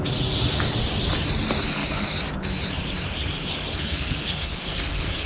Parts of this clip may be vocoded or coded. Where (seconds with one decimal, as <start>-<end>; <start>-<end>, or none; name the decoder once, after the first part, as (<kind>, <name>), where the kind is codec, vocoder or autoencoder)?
3.7-5.3 (codec, SNAC)